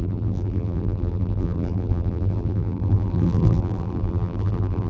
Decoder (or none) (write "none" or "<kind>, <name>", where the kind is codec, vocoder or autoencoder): vocoder, BigVGAN v2